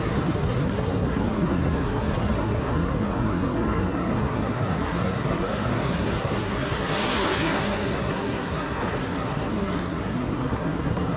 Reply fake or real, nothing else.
fake